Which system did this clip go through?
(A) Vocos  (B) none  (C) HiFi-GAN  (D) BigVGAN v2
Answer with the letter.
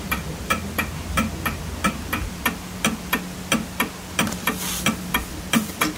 D